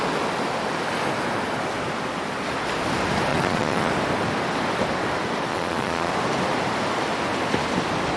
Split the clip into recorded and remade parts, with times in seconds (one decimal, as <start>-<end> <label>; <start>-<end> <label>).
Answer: 0.0-3.3 recorded; 3.3-3.9 remade; 3.9-5.5 recorded; 5.5-6.1 remade; 6.1-8.2 recorded